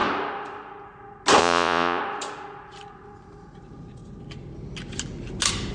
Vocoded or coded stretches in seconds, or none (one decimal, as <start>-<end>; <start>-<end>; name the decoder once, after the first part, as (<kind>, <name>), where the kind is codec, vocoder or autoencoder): 1.4-2.0 (vocoder, Vocos)

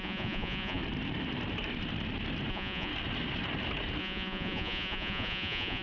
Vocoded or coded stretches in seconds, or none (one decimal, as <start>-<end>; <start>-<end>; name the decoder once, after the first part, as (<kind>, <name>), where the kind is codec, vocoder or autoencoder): 0.0-0.8 (vocoder, Vocos); 2.5-2.9; 4.0-5.8